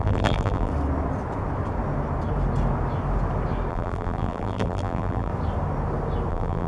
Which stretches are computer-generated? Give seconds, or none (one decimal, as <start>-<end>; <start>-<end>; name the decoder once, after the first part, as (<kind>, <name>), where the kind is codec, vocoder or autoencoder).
0.0-0.7 (vocoder, BigVGAN v2); 3.7-5.3; 6.3-6.7